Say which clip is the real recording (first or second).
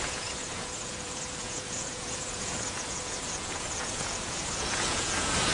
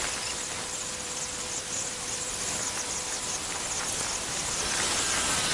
second